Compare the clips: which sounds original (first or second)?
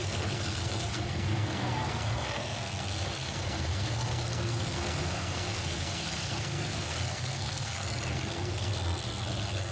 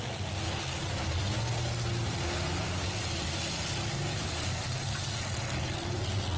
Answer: second